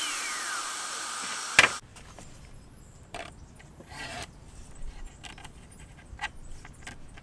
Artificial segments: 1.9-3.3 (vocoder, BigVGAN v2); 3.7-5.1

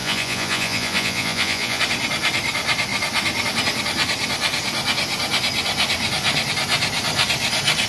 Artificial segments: 0.0-1.8 (vocoder, Vocos)

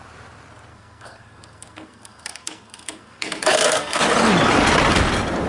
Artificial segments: 0.7-4.0 (codec, SNAC)

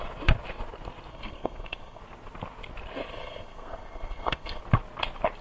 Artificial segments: 1.1-2.0 (codec, SNAC); 3.1-4.6

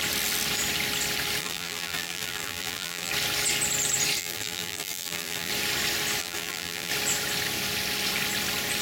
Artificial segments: 1.4-3.1 (vocoder, BigVGAN v2); 4.2-5.5; 6.2-6.9

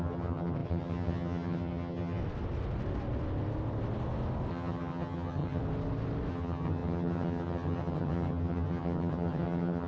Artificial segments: 0.0-2.2 (vocoder, HiFi-GAN); 4.5-5.6; 6.3-9.9

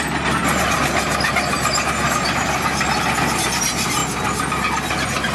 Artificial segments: none